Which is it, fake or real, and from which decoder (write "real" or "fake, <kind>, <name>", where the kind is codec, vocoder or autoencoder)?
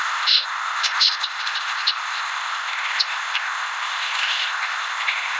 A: fake, codec, ZipCodec